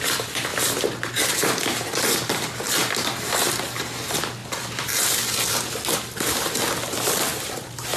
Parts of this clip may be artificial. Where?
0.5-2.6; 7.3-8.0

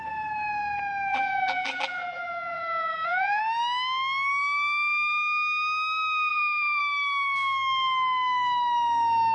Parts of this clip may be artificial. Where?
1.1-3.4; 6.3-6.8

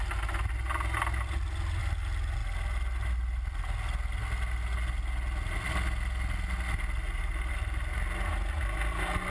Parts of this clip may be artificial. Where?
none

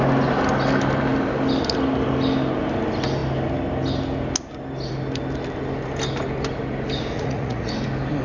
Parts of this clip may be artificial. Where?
7.1-7.7

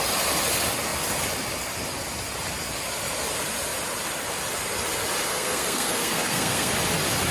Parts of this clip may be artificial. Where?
5.3-6.7